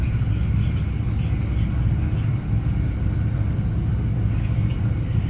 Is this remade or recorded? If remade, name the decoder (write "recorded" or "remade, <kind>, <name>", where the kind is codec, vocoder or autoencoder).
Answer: recorded